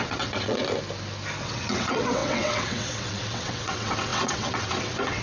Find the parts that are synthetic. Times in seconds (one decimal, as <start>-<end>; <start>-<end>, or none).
0.0-0.6; 1.4-5.2